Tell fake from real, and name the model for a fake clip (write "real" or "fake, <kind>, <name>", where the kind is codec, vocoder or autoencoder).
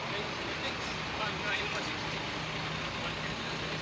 real